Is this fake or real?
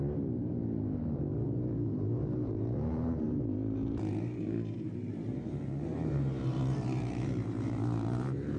fake